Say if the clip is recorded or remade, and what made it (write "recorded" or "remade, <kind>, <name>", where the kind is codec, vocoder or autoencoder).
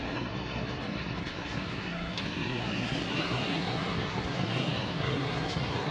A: remade, codec, SNAC